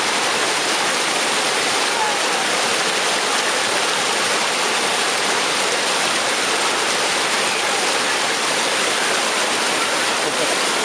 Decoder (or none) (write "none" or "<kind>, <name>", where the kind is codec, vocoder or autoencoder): none